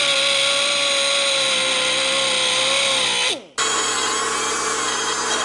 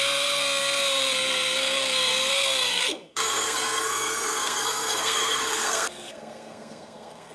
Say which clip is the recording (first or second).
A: first